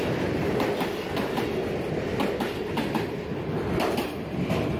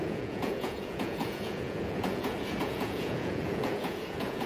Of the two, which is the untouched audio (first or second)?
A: first